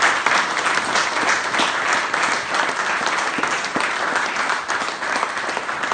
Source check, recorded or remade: recorded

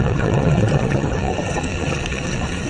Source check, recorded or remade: remade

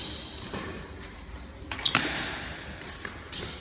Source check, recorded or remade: recorded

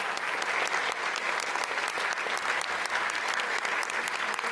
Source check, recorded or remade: recorded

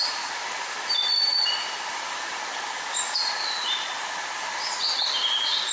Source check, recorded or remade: recorded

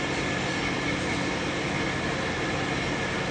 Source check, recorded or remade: recorded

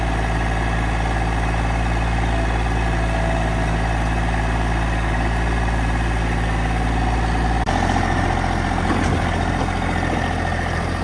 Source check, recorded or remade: recorded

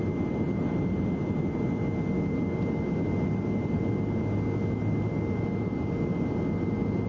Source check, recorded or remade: recorded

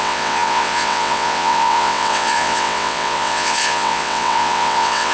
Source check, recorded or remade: remade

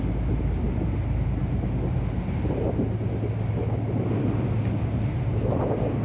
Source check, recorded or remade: recorded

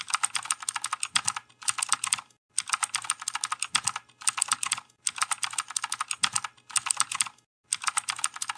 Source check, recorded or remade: recorded